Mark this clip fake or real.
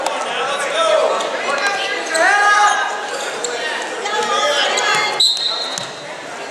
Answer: real